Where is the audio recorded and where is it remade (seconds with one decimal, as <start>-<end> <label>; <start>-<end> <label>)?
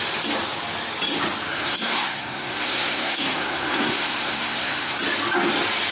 0.0-1.5 recorded; 1.5-5.0 remade; 5.0-5.9 recorded